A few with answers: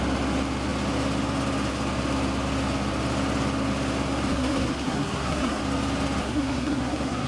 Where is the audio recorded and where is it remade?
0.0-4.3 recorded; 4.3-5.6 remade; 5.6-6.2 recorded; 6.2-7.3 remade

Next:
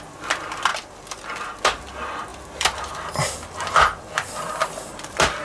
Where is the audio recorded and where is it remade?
0.0-0.7 recorded; 0.7-1.6 remade; 1.6-2.3 recorded; 2.3-4.9 remade; 4.9-5.4 recorded

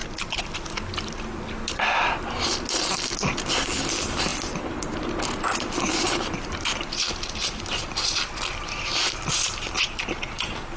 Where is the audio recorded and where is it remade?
0.0-0.5 remade; 0.5-0.9 recorded; 0.9-1.5 remade; 1.5-7.4 recorded; 7.4-9.7 remade; 9.7-10.8 recorded

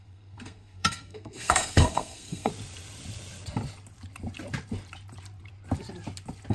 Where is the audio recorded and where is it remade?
0.0-2.5 remade; 2.5-6.5 recorded